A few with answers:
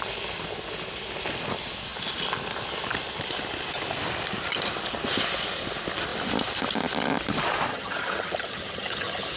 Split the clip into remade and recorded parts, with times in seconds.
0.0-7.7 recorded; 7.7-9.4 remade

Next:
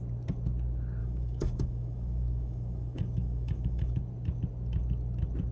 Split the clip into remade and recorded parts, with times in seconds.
0.0-1.0 recorded; 1.0-4.0 remade; 4.0-5.5 recorded

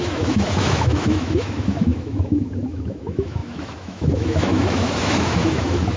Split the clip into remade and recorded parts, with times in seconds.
0.0-6.0 remade

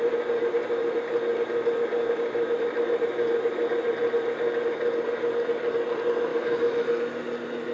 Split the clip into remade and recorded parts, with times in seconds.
0.0-6.3 recorded; 6.3-6.9 remade; 6.9-7.7 recorded